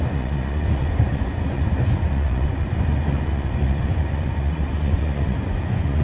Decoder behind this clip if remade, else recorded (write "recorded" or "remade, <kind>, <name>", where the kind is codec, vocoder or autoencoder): remade, vocoder, Vocos